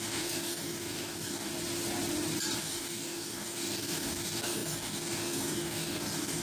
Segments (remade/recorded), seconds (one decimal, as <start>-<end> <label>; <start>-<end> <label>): 0.0-1.5 remade; 1.5-2.6 recorded; 2.6-6.4 remade